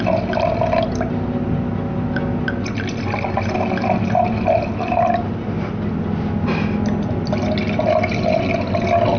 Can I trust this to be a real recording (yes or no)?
yes